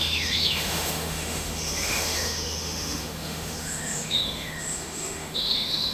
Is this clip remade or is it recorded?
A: remade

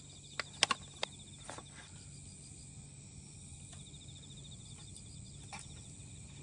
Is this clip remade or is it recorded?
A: recorded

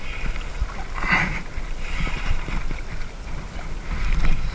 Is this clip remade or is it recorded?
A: remade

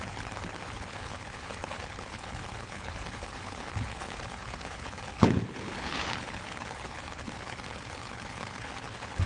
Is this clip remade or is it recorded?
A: remade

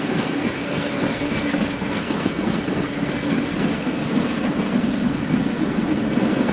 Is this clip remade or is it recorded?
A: remade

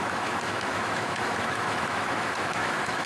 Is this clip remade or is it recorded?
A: remade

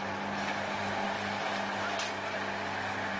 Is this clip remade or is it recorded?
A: recorded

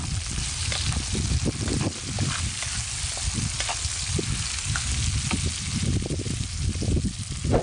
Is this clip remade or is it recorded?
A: recorded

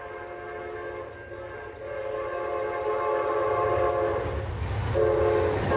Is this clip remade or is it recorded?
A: recorded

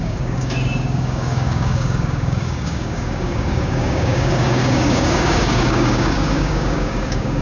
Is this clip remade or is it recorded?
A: remade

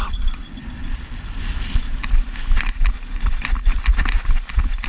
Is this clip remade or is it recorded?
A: recorded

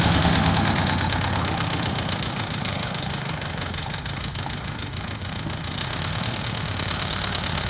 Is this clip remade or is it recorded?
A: remade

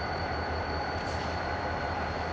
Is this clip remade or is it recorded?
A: remade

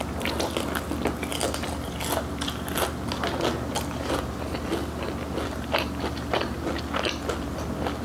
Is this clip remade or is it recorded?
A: recorded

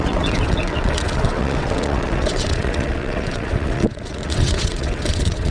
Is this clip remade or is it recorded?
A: remade